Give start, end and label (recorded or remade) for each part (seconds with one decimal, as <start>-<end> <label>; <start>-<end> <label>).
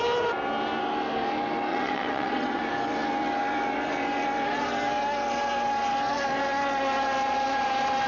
0.0-1.7 recorded; 1.7-2.6 remade; 2.6-8.1 recorded